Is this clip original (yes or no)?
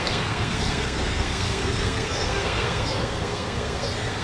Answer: no